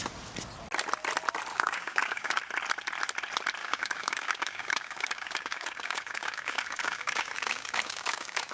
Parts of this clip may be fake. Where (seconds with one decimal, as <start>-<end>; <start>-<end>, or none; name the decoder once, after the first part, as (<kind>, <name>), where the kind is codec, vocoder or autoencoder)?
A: 1.5-2.4 (codec, DAC); 3.6-8.5